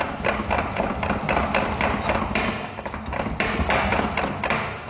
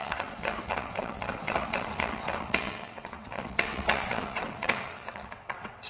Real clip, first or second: first